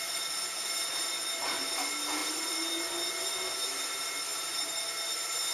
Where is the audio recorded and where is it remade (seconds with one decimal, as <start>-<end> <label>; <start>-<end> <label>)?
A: 0.0-4.3 recorded; 4.3-4.9 remade; 4.9-5.5 recorded